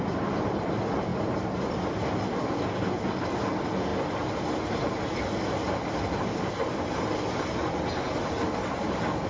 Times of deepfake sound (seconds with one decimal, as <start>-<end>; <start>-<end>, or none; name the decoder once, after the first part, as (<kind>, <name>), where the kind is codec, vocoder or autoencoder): none